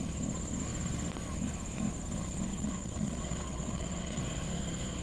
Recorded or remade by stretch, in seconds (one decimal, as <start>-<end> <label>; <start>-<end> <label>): 0.0-2.5 recorded; 2.5-4.2 remade; 4.2-5.0 recorded

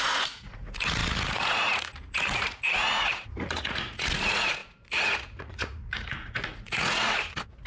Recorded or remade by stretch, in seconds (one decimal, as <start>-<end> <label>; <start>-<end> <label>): 0.0-7.7 remade